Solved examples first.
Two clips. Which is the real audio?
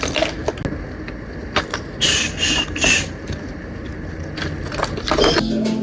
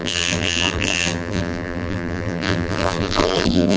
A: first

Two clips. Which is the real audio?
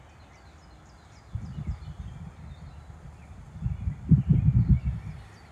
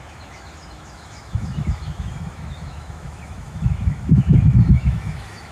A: first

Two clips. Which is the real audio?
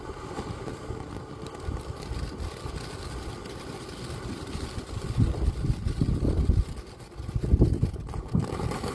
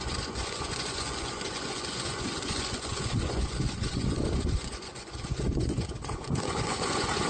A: first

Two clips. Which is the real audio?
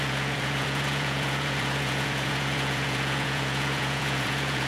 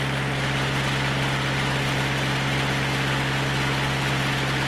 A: second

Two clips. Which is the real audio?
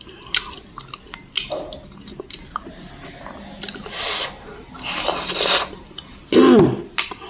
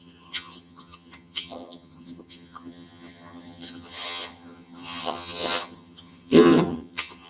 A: first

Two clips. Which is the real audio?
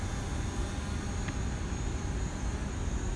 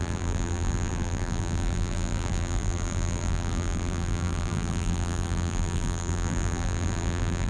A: first